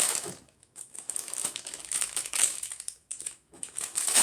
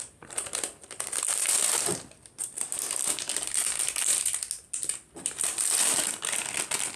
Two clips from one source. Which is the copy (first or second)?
first